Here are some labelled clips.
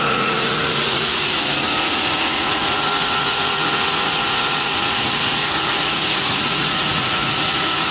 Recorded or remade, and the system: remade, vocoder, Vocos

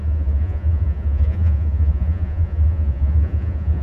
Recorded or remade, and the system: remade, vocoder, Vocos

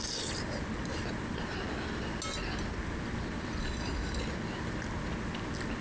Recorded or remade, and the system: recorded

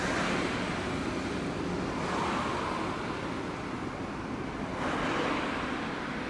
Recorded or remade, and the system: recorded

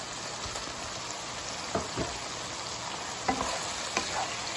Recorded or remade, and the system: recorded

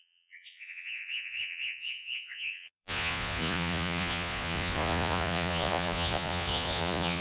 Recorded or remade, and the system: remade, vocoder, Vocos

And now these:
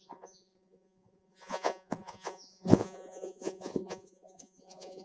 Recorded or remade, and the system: remade, vocoder, Vocos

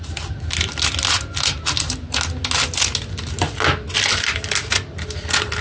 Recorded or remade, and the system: recorded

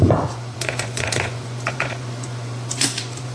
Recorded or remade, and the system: remade, vocoder, Vocos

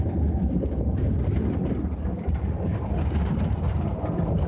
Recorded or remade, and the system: recorded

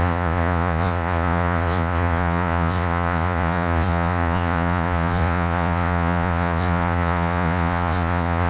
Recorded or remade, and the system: remade, vocoder, Vocos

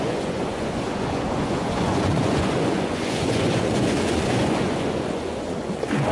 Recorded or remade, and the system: remade, vocoder, Vocos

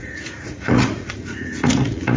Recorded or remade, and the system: remade, vocoder, Vocos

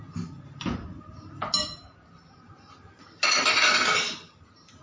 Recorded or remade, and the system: recorded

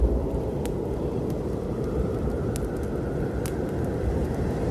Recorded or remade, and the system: recorded